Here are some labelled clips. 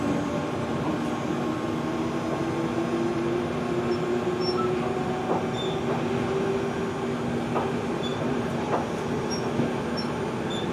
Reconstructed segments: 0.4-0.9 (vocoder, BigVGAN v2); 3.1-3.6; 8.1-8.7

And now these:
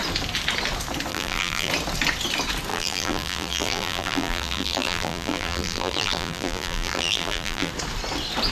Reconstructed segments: 1.1-1.7 (vocoder, BigVGAN v2); 2.7-7.7

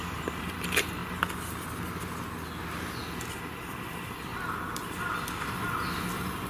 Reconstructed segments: 0.0-1.0 (vocoder, BigVGAN v2); 3.3-4.3; 5.1-6.5

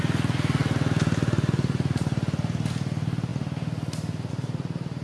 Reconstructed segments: none

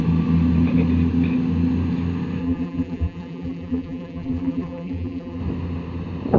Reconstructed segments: 2.4-5.4 (vocoder, BigVGAN v2)

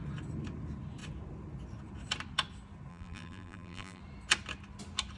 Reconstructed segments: 2.9-4.0 (vocoder, BigVGAN v2)

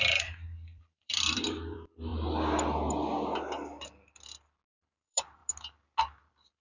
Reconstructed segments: 0.0-2.1 (vocoder, BigVGAN v2); 4.7-5.4; 6.0-6.6